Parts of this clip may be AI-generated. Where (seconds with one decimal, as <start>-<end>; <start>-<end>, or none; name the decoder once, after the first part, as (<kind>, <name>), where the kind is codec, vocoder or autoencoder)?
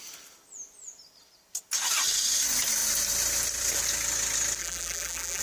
4.6-5.4 (vocoder, BigVGAN v2)